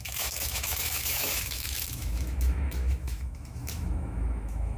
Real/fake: fake